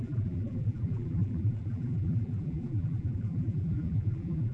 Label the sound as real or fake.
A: fake